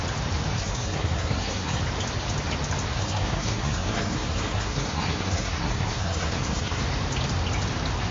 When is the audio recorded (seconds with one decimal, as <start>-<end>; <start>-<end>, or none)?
0.0-0.5; 1.8-2.9; 6.8-8.1